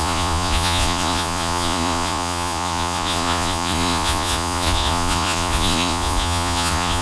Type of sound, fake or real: fake